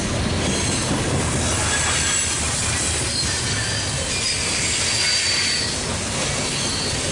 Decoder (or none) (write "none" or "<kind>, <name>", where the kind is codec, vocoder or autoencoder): none